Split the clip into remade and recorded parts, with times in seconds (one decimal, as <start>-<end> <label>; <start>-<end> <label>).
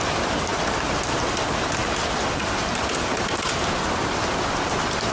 0.0-5.1 recorded